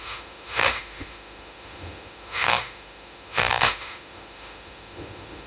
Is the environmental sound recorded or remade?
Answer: remade